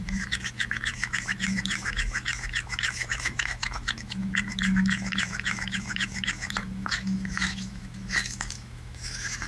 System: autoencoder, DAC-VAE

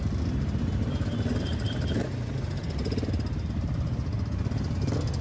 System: none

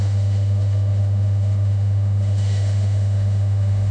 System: autoencoder, DAC-VAE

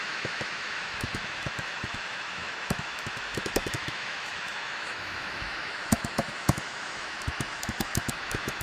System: autoencoder, DAC-VAE